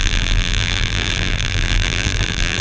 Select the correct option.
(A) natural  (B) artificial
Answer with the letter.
B